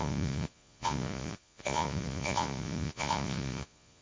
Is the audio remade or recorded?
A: remade